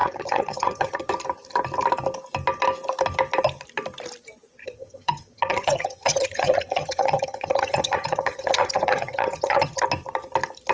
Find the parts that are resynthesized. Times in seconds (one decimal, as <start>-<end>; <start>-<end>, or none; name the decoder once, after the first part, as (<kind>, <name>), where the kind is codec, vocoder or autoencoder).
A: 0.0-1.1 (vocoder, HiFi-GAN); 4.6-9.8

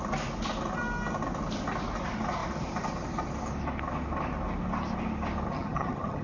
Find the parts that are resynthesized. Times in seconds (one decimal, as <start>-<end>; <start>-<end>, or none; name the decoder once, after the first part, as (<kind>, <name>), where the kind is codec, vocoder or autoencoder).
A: 5.5-6.2 (vocoder, HiFi-GAN)

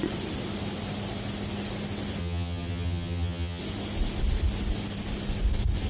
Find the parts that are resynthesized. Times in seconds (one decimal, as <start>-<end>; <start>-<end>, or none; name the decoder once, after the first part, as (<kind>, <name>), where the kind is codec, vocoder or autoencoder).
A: 2.2-3.6 (vocoder, HiFi-GAN)

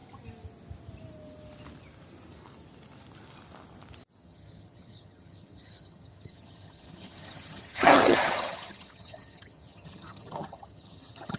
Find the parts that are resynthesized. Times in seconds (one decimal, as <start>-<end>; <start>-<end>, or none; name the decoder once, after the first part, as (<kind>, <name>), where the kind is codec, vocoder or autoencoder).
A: 4.2-11.4 (vocoder, HiFi-GAN)

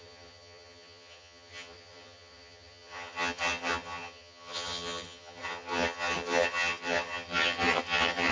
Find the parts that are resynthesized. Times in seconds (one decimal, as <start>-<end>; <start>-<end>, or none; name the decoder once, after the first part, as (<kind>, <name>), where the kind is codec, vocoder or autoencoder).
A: 0.0-8.3 (vocoder, HiFi-GAN)

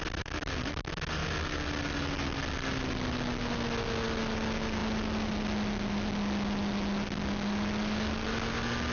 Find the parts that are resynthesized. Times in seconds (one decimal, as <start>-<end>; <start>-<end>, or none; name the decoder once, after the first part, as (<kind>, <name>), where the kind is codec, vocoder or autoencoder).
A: none

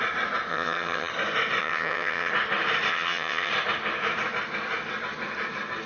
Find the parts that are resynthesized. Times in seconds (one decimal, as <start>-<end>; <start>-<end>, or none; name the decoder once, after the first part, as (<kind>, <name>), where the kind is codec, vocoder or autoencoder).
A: 0.5-1.1 (vocoder, HiFi-GAN); 1.6-2.3; 2.9-3.5